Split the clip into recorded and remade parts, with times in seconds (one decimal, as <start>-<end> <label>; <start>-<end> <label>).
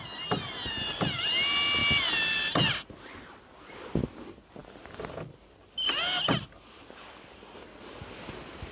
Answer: 0.0-8.7 recorded